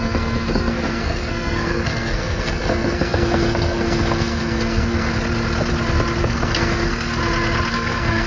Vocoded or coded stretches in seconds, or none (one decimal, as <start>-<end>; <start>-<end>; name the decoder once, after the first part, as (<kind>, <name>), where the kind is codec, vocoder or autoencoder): 0.0-5.1 (codec, SNAC); 6.2-7.2; 7.7-8.3